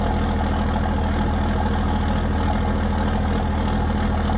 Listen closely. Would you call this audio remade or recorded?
recorded